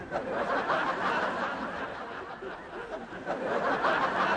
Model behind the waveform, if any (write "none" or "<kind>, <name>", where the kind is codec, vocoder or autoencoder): none